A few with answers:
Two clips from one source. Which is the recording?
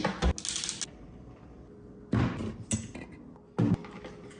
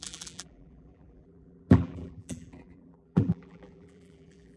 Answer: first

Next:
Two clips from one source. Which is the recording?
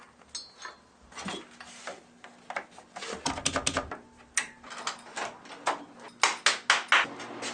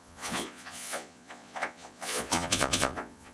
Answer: first